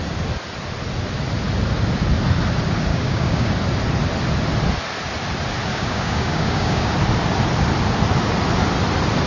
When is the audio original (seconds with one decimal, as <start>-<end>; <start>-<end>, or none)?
0.0-2.9; 3.5-5.7; 6.9-9.3